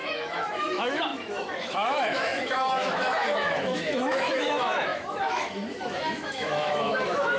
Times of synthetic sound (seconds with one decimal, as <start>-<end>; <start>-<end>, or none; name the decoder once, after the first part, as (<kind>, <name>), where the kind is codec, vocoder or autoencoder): 0.0-7.4 (autoencoder, DAC-VAE)